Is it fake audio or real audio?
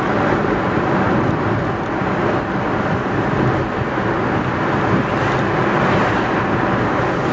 real